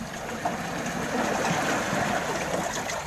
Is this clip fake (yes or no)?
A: no